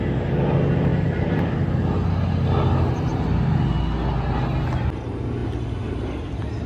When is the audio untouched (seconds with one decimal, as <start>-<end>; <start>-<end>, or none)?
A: 0.0-0.9; 1.5-6.7